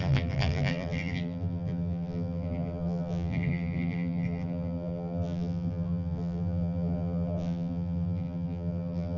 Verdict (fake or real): fake